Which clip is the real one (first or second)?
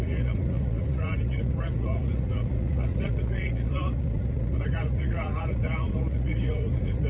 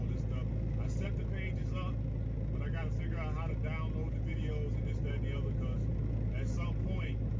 second